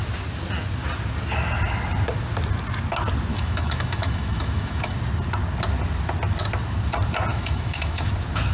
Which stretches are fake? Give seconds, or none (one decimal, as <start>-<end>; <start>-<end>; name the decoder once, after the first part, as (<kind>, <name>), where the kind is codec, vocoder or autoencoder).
3.3-5.0 (autoencoder, DAC-VAE); 7.3-8.1